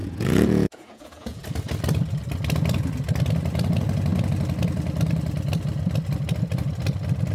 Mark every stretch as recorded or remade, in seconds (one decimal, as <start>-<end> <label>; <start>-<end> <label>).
0.0-1.4 remade; 1.4-7.3 recorded